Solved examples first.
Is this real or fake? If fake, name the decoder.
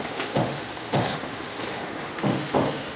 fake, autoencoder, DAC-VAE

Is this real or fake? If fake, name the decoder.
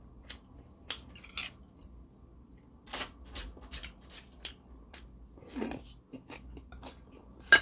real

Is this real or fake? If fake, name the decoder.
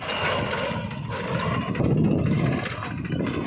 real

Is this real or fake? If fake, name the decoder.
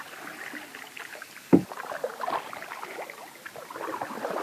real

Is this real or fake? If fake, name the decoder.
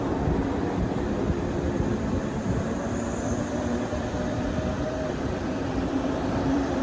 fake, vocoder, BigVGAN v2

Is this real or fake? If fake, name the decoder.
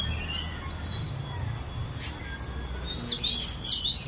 real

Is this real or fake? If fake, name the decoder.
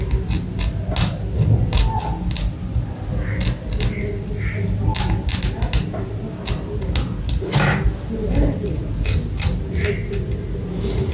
real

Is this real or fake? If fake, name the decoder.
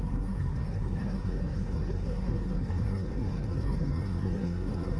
fake, codec, SNAC